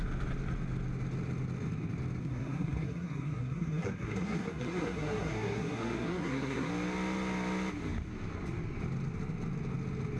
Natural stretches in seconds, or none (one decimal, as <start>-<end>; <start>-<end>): 0.0-2.2; 6.7-10.2